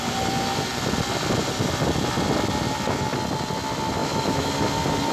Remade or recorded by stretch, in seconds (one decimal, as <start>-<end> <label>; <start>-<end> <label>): 0.0-4.0 recorded; 4.0-4.5 remade; 4.5-5.1 recorded